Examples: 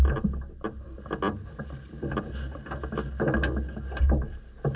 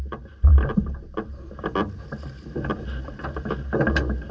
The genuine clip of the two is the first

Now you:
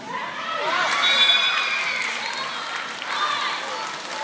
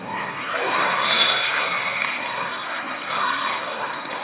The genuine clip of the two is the first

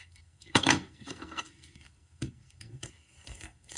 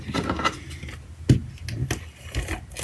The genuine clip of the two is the second